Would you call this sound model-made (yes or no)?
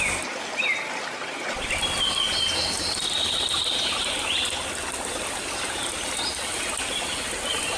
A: no